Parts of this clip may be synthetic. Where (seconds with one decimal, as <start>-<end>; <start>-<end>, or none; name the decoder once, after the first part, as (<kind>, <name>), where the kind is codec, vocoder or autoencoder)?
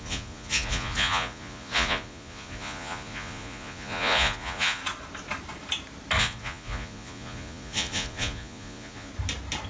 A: 0.0-4.8 (vocoder, Vocos); 6.2-9.1